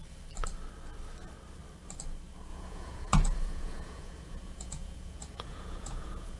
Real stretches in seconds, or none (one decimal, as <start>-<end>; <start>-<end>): 0.0-2.5